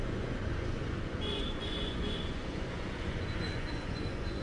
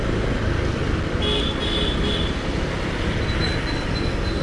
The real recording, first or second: second